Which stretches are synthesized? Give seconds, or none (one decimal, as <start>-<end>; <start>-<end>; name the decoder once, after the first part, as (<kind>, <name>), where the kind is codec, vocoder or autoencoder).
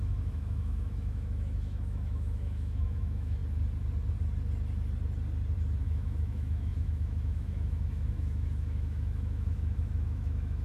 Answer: 0.0-3.4 (autoencoder, DAC-VAE); 5.8-10.6